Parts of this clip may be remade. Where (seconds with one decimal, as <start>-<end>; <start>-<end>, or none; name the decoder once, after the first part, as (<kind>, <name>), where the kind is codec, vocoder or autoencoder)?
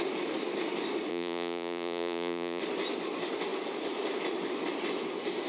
1.1-2.6 (vocoder, Vocos)